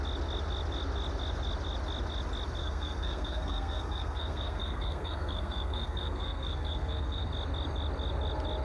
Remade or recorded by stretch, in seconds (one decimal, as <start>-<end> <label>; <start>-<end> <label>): 0.0-2.6 recorded; 2.6-7.3 remade; 7.3-8.6 recorded